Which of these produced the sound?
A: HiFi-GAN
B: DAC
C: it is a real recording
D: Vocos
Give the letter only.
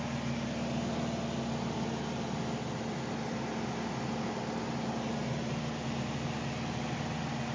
C